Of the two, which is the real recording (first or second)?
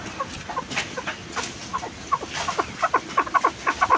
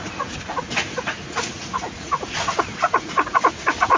first